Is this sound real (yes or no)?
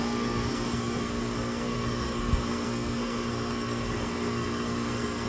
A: no